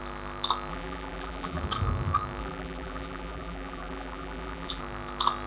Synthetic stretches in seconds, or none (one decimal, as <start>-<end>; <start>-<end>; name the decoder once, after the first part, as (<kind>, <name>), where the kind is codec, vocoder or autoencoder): 0.7-1.6 (vocoder, BigVGAN v2); 2.4-4.8